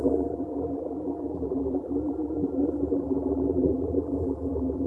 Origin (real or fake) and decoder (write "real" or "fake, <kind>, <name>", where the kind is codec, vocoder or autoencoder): fake, vocoder, BigVGAN v2